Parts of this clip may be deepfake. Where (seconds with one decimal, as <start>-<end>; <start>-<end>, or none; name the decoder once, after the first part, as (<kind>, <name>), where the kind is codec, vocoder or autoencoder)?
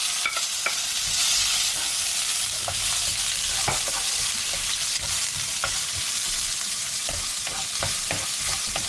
none